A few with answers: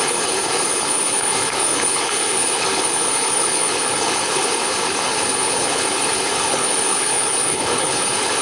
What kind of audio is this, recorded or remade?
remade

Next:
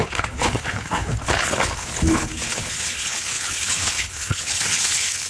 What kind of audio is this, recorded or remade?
remade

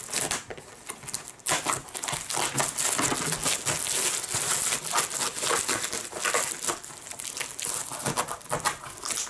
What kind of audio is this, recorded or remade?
recorded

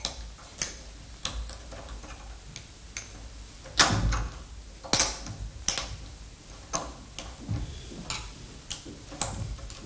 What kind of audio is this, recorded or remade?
recorded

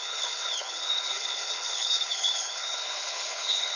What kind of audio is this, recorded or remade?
remade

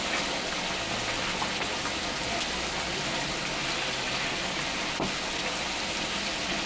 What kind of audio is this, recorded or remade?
recorded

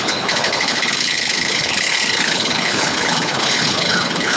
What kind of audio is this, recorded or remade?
remade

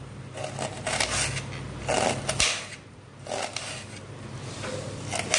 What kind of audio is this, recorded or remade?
recorded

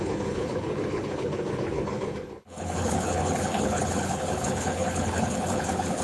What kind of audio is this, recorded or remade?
remade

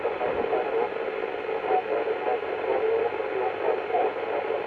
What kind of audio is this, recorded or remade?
recorded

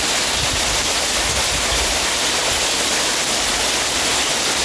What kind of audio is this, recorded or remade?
recorded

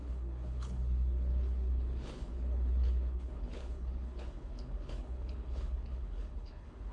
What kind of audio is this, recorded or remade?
remade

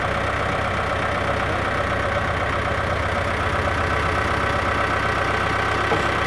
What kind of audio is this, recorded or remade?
recorded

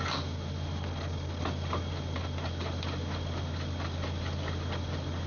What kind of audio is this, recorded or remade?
recorded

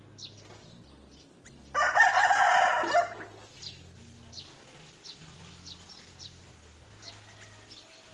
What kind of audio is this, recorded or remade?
recorded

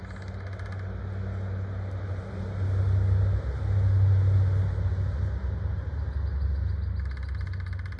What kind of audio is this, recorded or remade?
recorded